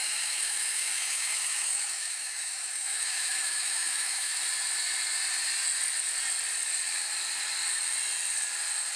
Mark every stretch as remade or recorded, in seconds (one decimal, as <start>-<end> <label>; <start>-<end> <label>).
0.0-4.4 remade; 4.4-9.0 recorded